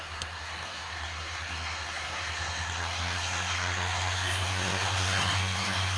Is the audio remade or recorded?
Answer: remade